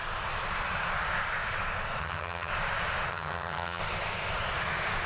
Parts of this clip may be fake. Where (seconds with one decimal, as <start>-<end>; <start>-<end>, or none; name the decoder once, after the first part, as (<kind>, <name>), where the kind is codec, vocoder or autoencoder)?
2.0-2.5 (vocoder, HiFi-GAN); 3.1-3.8

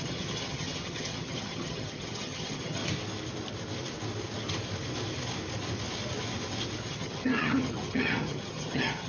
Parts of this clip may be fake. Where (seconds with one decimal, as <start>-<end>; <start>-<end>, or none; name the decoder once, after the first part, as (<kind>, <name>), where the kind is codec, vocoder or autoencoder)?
0.0-2.8 (vocoder, HiFi-GAN); 6.9-9.1

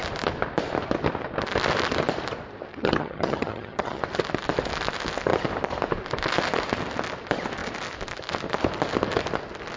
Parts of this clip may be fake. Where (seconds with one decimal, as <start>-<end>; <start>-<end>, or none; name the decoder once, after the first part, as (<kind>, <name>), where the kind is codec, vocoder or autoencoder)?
2.7-4.0 (vocoder, HiFi-GAN)

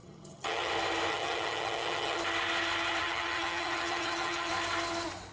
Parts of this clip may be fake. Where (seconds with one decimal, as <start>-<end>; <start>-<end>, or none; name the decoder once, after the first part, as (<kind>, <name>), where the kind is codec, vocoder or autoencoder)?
0.0-0.7 (vocoder, HiFi-GAN); 1.1-2.2; 3.0-4.5

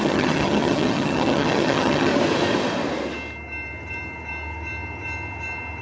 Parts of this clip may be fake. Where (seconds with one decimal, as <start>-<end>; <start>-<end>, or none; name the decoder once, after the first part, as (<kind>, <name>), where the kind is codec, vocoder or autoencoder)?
0.0-2.1 (vocoder, HiFi-GAN)